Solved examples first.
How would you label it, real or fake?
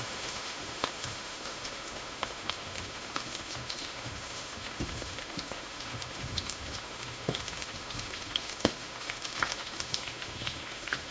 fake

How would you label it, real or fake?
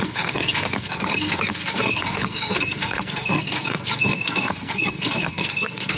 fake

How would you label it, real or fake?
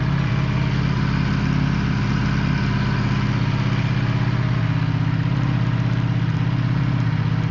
real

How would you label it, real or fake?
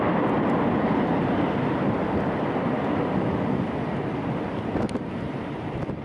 real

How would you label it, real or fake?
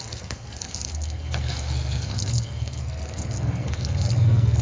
fake